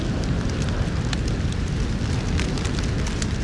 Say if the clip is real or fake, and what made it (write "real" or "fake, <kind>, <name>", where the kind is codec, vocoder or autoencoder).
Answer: real